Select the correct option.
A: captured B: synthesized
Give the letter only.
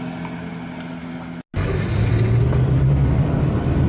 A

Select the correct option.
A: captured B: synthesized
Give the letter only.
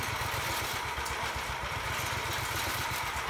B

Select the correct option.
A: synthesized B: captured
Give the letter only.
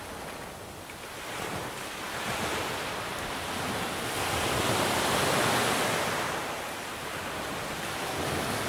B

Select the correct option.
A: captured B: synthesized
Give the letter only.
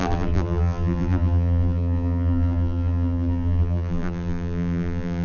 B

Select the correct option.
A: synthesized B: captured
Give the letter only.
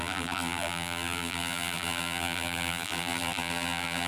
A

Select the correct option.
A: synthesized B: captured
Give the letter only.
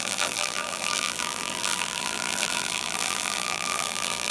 A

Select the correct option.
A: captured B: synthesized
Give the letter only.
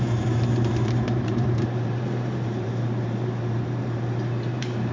B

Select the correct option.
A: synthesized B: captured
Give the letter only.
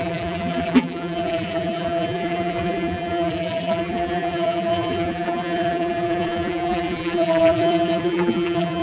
A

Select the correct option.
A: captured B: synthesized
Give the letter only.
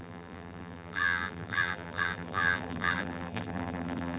B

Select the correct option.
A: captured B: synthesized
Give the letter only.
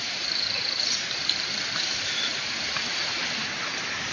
B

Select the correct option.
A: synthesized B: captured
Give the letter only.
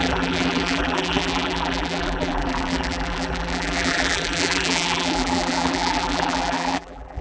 A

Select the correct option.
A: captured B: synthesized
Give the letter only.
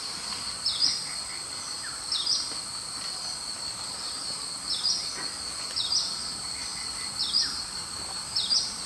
A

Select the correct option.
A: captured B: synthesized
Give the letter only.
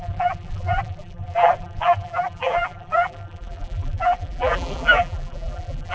B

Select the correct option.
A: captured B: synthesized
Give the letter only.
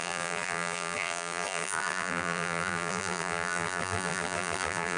B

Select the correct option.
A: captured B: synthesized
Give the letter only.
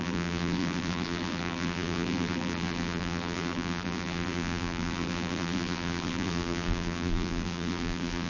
B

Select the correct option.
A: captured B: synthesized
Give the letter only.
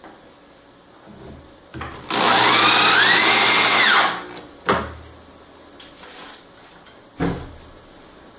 A